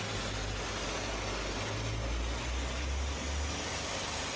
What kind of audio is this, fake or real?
real